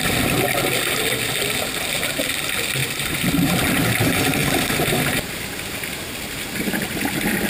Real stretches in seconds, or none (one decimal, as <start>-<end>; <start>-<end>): 0.0-2.8; 3.9-4.4